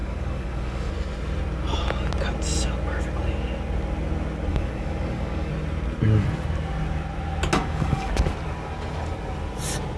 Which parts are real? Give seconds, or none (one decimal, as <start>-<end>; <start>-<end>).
0.9-4.5; 5.5-7.6; 8.1-10.0